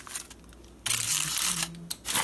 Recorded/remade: recorded